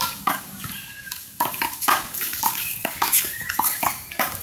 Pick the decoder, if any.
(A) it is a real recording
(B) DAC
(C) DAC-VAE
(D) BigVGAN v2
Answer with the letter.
B